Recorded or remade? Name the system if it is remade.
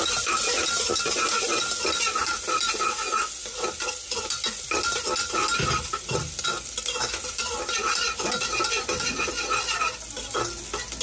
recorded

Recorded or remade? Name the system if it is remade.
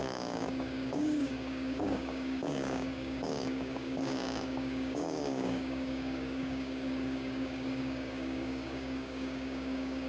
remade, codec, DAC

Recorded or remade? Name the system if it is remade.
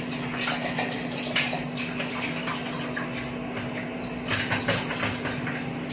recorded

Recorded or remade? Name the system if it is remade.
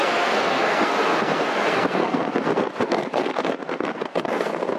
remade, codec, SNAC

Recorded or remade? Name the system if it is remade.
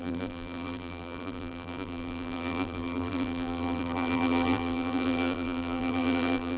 remade, vocoder, BigVGAN v2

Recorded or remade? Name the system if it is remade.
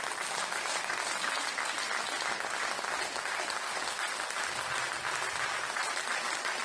recorded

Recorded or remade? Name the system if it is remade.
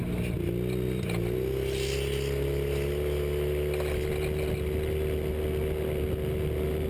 recorded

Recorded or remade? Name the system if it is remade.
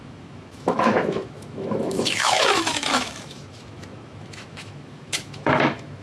remade, autoencoder, DAC-VAE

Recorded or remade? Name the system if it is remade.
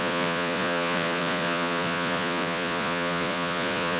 remade, vocoder, Vocos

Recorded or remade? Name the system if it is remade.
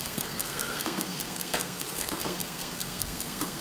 remade, codec, SNAC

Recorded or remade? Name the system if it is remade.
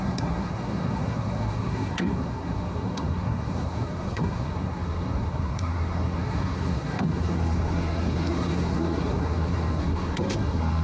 remade, codec, SNAC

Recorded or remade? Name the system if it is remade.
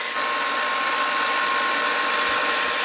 recorded